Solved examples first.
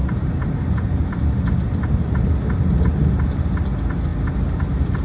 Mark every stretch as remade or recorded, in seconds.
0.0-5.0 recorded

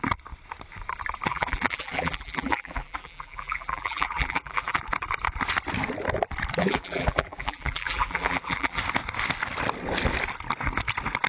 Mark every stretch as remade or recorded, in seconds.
0.0-1.3 recorded; 1.3-4.8 remade; 4.8-6.6 recorded; 6.6-8.8 remade; 8.8-11.3 recorded